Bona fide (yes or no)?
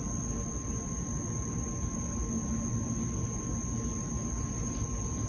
yes